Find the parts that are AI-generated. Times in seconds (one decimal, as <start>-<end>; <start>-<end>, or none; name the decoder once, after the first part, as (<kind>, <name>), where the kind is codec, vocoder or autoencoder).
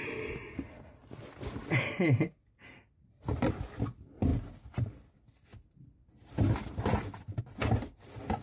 none